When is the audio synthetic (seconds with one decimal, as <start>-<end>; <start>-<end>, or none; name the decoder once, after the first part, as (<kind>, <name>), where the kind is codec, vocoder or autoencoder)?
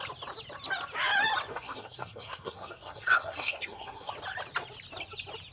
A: 1.5-4.1 (codec, SNAC)